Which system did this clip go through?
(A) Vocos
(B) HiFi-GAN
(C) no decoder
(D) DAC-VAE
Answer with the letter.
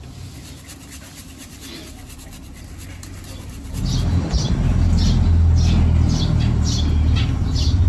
C